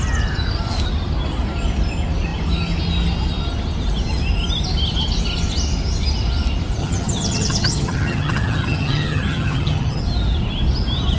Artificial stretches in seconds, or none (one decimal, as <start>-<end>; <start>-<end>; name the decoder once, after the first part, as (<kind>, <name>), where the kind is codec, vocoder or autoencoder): 6.8-10.0 (vocoder, HiFi-GAN)